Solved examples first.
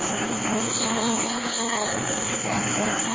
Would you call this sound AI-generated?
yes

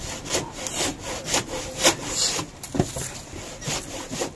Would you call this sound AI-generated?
no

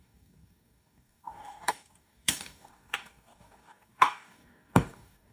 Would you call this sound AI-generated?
yes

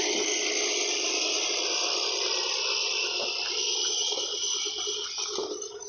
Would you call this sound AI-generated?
no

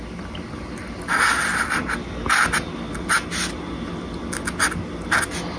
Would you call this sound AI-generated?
no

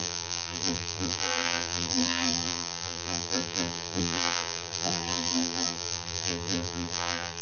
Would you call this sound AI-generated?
yes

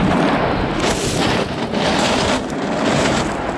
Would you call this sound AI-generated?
no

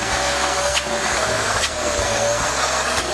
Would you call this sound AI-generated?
yes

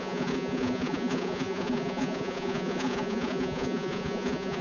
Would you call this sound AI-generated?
yes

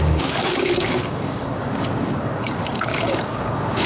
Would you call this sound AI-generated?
yes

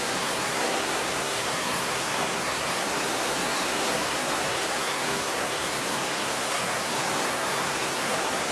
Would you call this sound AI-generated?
yes